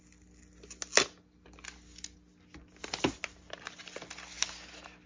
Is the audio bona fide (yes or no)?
yes